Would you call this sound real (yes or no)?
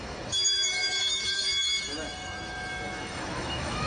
no